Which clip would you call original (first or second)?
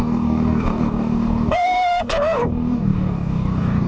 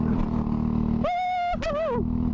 second